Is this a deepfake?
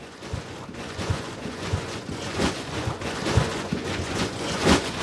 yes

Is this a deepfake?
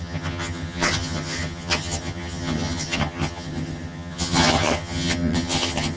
yes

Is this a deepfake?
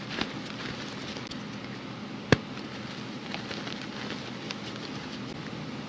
no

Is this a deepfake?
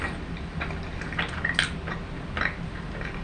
no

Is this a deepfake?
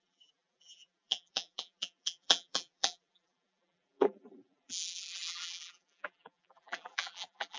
yes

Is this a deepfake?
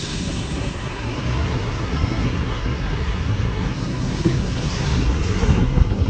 yes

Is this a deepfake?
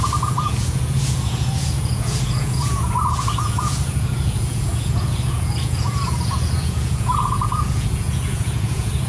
yes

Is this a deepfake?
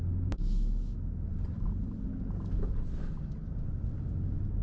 no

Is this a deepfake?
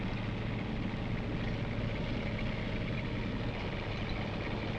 no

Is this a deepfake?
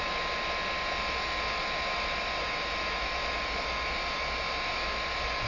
no